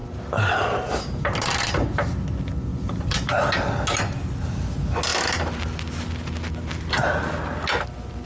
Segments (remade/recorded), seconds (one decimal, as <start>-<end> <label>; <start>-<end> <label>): 0.0-2.7 recorded; 2.7-3.3 remade; 3.3-8.3 recorded